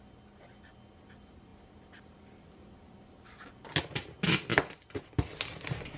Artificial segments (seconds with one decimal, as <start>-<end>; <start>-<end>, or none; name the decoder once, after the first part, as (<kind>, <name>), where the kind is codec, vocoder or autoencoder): none